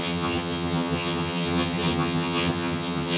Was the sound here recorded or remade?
remade